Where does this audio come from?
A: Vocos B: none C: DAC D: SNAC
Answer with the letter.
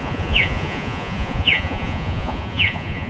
A